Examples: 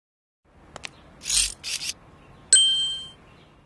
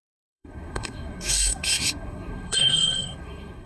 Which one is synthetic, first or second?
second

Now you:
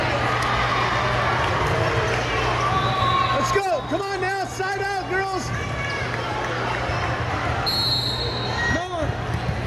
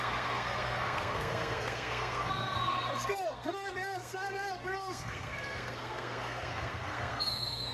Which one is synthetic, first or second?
second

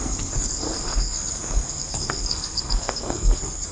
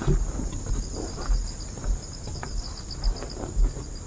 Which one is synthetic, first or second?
first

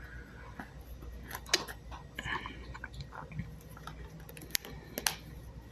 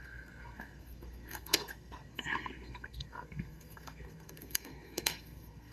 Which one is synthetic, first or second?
second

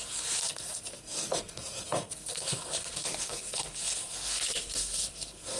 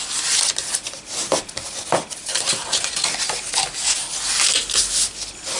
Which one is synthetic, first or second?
first